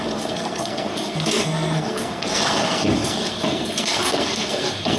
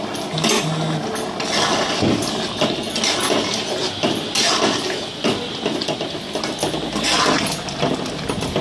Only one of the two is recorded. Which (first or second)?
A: second